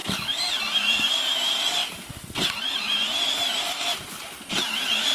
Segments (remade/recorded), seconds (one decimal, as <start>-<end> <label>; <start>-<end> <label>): 0.0-0.5 recorded; 0.5-1.8 remade; 1.8-2.5 recorded; 2.5-5.1 remade